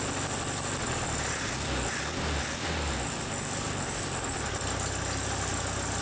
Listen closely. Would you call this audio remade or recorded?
recorded